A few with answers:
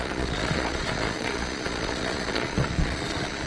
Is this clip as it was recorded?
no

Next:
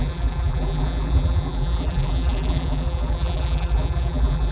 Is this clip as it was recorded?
no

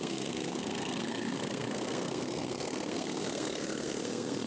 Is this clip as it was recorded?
no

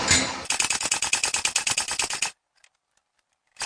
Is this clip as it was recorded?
yes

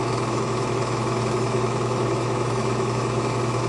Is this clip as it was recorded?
no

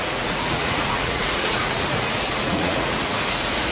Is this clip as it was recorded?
no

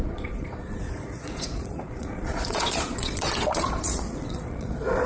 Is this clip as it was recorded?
no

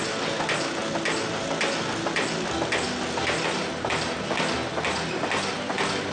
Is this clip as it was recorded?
yes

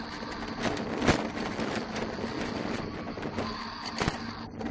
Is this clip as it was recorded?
yes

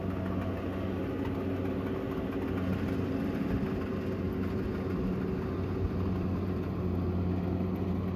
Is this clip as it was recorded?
yes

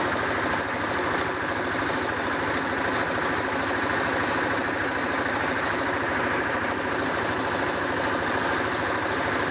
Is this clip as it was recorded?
yes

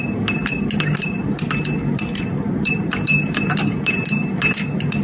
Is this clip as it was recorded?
yes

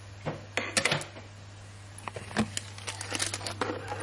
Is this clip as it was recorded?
yes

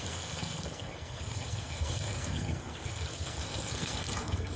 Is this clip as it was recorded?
no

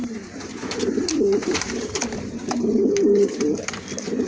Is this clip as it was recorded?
no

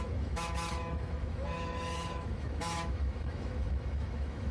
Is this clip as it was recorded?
no